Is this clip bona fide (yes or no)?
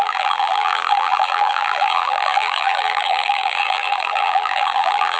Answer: no